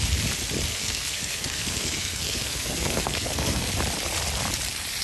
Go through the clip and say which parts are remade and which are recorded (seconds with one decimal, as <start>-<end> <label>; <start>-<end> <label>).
0.0-0.7 recorded; 0.7-3.7 remade; 3.7-5.0 recorded